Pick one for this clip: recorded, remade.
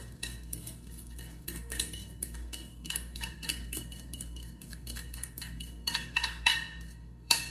remade